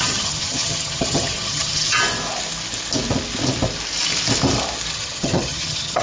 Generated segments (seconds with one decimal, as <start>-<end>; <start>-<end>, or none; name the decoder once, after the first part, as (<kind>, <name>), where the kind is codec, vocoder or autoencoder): 0.0-2.0 (vocoder, HiFi-GAN); 4.9-6.0